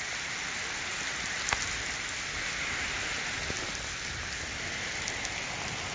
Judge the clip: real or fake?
real